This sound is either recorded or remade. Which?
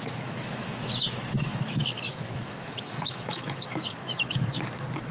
remade